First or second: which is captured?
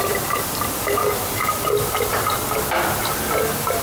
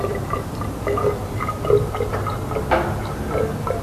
second